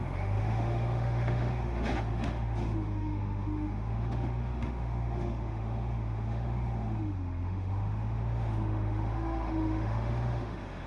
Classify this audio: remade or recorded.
remade